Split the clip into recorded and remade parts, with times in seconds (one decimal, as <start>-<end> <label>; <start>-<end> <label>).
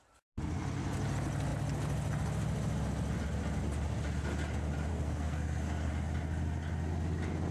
0.0-4.9 recorded; 4.9-5.9 remade; 5.9-7.5 recorded